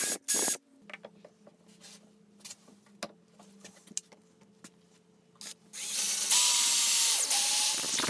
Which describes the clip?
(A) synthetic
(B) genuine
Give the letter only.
B